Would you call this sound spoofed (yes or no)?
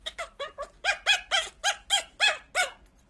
no